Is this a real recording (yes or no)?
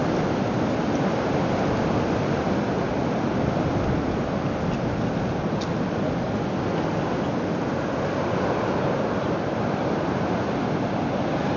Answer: yes